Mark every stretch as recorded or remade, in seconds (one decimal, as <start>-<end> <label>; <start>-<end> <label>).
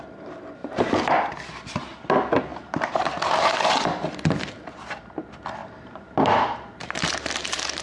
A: 0.0-0.6 recorded; 0.6-1.3 remade; 1.3-2.5 recorded; 2.5-3.5 remade; 3.5-5.6 recorded; 5.6-7.8 remade